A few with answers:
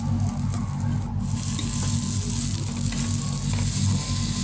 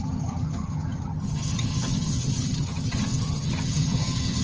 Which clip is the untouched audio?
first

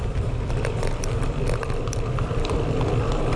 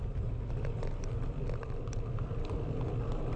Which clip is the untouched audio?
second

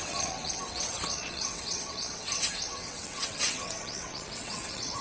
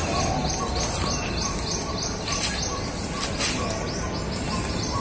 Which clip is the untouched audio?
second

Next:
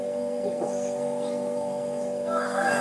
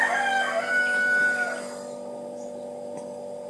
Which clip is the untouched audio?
second